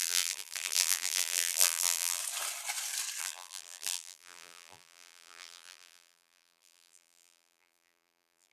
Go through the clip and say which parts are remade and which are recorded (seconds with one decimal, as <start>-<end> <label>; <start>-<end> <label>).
0.0-2.2 remade; 2.2-3.2 recorded; 3.2-8.5 remade